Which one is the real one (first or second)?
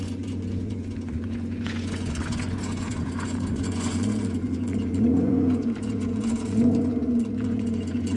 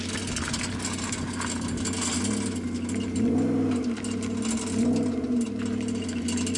second